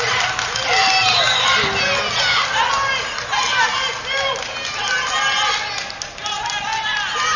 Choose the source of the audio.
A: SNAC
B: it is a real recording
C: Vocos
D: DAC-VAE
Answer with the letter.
B